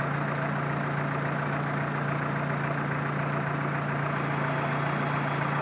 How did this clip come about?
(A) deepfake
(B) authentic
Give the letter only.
B